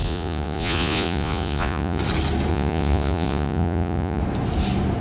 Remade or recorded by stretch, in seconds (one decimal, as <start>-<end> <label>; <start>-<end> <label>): 0.0-2.0 remade; 2.0-2.5 recorded; 2.5-4.2 remade; 4.2-5.0 recorded